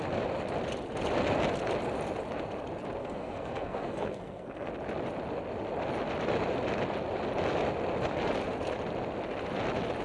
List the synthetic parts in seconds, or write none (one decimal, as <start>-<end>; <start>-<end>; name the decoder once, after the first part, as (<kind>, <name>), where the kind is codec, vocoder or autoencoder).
3.0-4.7 (codec, SNAC)